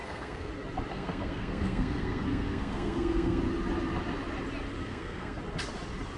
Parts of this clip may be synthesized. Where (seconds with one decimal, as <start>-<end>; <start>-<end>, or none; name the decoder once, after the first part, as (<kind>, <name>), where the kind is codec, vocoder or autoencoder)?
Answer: 0.0-0.5 (codec, SNAC); 0.9-3.4; 4.8-5.4